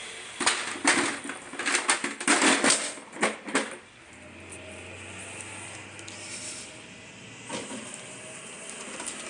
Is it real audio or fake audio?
real